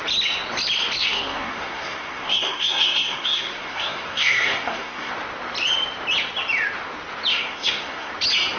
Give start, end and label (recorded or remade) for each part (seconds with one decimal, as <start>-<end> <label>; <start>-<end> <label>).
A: 0.0-1.0 recorded; 1.0-5.1 remade; 5.1-7.3 recorded; 7.3-8.1 remade; 8.1-8.6 recorded

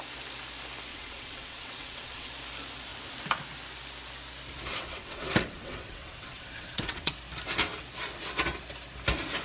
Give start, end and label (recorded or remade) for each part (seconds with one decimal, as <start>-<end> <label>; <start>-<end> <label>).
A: 0.0-0.9 recorded; 0.9-2.3 remade; 2.3-4.7 recorded; 4.7-7.1 remade; 7.1-9.4 recorded

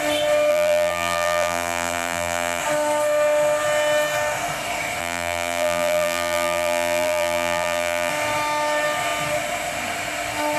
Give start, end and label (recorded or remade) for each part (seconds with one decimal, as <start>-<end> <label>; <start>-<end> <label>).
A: 0.0-0.5 recorded; 0.5-2.6 remade; 2.6-5.0 recorded; 5.0-8.1 remade; 8.1-10.6 recorded

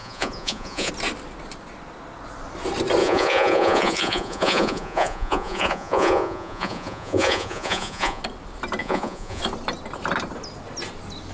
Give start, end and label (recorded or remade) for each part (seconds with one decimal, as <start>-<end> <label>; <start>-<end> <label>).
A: 0.0-0.9 remade; 0.9-3.0 recorded; 3.0-8.2 remade; 8.2-8.8 recorded; 8.8-9.4 remade; 9.4-11.3 recorded